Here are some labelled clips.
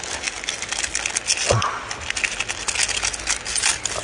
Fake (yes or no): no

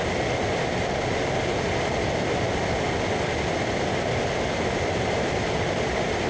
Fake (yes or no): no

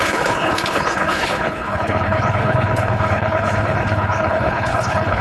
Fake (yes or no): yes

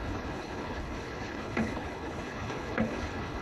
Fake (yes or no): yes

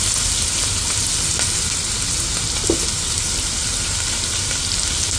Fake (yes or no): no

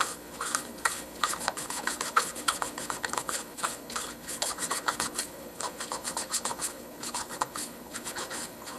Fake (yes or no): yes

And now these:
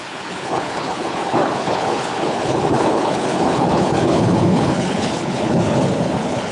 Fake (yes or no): yes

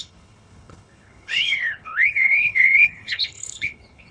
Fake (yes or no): yes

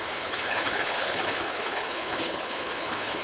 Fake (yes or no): yes